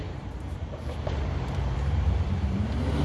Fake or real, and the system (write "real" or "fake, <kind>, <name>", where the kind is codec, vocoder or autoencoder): fake, vocoder, BigVGAN v2